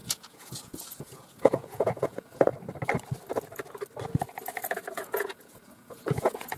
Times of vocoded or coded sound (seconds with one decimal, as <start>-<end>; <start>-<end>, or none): 0.0-2.5; 4.9-6.6